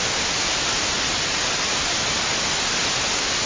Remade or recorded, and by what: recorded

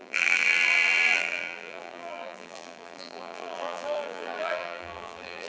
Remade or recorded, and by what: remade, vocoder, BigVGAN v2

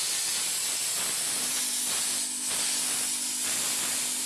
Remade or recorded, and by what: recorded